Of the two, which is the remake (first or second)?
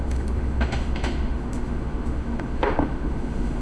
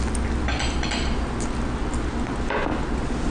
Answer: first